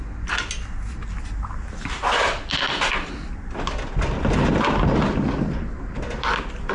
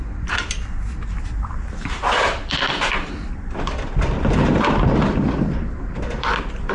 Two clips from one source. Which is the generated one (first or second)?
second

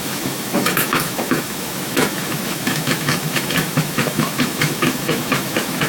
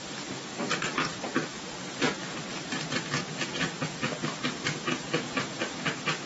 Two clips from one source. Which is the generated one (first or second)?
first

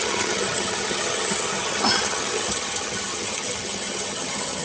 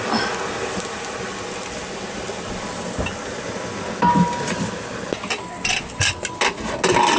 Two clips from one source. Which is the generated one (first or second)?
first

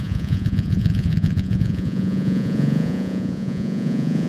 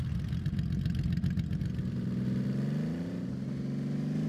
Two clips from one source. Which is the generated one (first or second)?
first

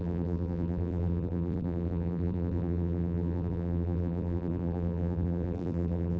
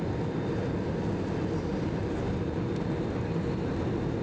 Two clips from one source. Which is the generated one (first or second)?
first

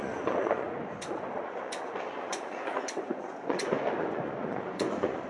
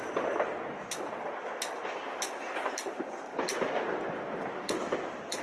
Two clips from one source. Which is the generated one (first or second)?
first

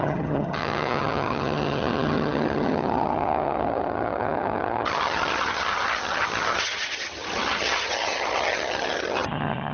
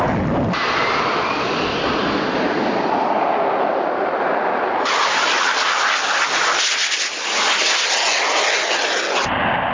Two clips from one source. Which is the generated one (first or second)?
first